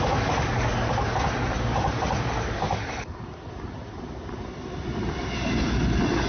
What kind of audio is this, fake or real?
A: real